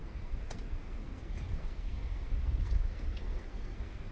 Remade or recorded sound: remade